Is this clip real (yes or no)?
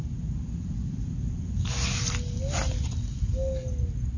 yes